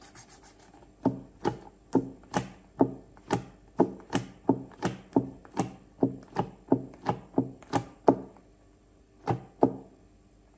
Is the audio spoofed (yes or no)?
no